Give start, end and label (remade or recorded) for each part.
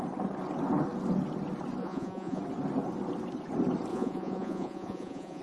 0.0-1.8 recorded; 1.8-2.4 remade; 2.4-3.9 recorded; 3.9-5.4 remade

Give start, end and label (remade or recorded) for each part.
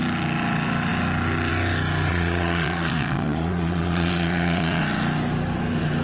0.0-2.1 recorded; 2.1-4.8 remade; 4.8-6.0 recorded